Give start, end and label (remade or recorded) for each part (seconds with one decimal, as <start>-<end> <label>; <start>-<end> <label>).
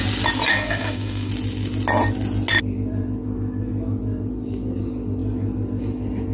0.0-0.5 recorded; 0.5-1.3 remade; 1.3-6.3 recorded